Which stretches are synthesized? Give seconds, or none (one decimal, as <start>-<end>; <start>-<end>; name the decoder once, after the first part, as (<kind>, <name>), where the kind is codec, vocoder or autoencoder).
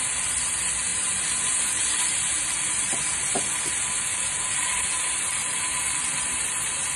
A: 0.9-1.7 (vocoder, BigVGAN v2)